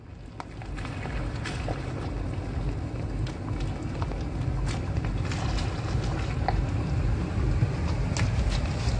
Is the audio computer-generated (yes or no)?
no